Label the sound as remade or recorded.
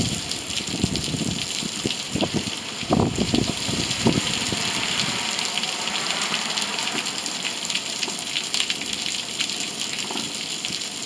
remade